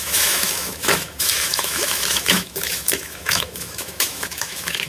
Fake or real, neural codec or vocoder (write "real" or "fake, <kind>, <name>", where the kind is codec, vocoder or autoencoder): fake, autoencoder, DAC-VAE